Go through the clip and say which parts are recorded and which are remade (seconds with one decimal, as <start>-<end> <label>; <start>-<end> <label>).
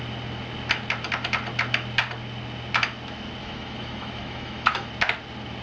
0.0-3.4 recorded; 3.4-4.9 remade; 4.9-5.6 recorded